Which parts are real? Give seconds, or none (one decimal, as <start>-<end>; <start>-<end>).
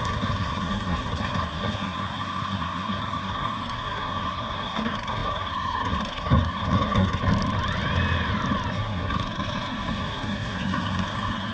7.2-8.7